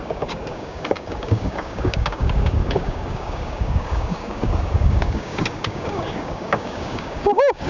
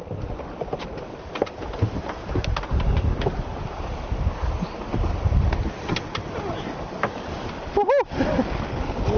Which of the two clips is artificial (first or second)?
first